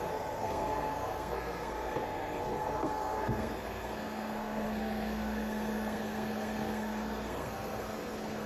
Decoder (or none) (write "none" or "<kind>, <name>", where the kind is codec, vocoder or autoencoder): codec, SNAC